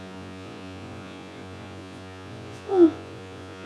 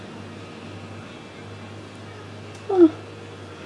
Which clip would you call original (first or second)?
second